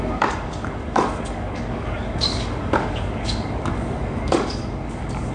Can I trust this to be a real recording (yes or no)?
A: no